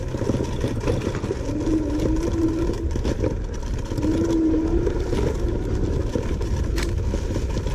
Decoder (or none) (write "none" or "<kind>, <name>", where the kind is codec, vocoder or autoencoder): none